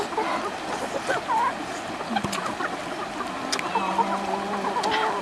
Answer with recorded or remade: recorded